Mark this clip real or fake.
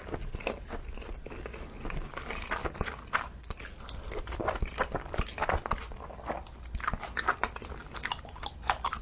real